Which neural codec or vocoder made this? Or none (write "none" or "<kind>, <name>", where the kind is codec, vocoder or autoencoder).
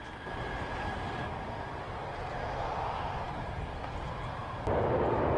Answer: none